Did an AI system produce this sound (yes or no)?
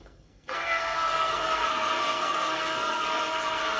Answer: yes